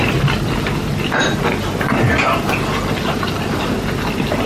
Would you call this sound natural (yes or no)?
yes